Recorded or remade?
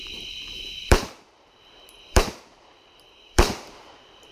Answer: remade